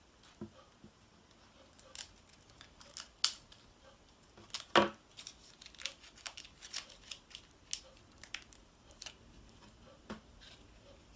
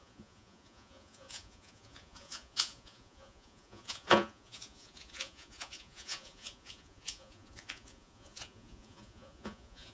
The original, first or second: first